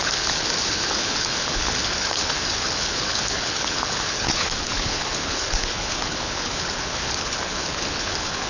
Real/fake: fake